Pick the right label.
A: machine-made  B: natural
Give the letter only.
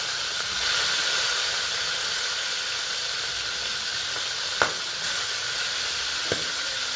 B